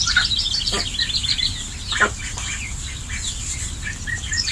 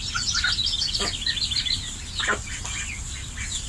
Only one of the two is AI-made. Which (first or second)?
first